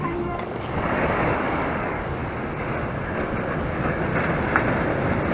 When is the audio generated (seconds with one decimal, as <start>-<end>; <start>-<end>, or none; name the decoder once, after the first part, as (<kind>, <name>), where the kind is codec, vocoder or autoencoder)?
0.0-2.2 (codec, DAC); 3.6-4.1